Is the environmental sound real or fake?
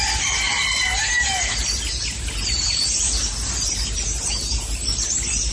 real